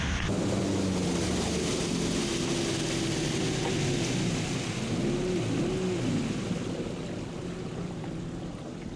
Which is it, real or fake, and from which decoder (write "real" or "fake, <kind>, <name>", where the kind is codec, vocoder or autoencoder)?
real